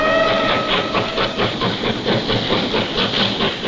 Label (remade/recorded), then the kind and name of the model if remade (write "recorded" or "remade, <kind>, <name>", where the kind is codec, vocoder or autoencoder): recorded